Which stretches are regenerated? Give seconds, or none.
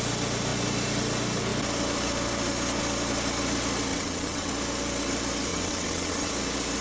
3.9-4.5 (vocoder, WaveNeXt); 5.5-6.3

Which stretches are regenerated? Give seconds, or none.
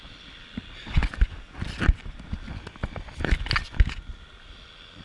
none